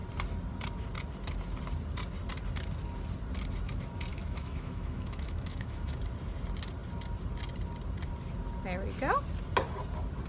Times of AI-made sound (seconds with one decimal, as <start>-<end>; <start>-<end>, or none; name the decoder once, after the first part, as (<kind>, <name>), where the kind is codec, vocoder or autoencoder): 4.1-6.0 (autoencoder, DAC-VAE)